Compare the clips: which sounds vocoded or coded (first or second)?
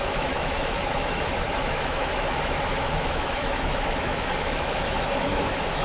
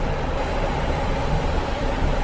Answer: first